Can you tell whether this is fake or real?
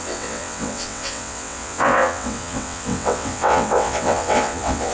fake